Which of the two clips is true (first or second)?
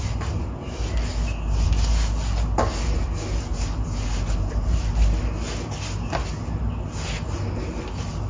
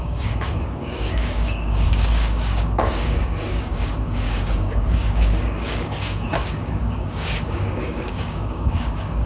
first